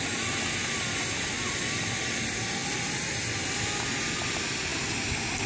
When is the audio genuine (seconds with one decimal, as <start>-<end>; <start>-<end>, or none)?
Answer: 0.0-5.5